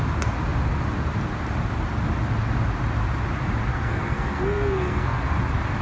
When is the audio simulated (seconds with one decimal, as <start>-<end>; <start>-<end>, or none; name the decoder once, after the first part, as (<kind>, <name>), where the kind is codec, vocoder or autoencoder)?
3.7-5.2 (codec, SNAC)